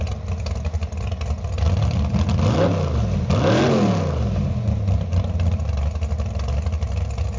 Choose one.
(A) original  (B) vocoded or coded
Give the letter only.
A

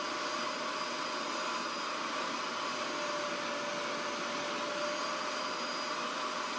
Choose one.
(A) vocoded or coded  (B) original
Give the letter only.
B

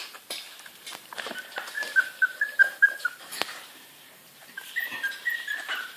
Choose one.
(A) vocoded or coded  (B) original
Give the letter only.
A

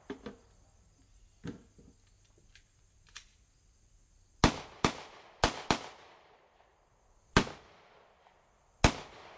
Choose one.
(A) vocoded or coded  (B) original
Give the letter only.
B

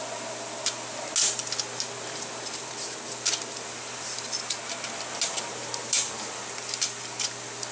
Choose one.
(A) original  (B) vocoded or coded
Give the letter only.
A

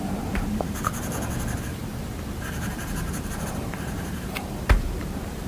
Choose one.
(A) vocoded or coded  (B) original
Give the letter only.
A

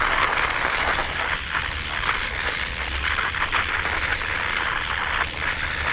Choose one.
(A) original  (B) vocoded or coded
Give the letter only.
A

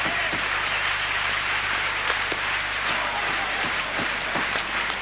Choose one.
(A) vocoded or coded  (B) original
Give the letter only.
A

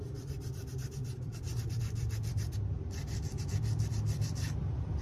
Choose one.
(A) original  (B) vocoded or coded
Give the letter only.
B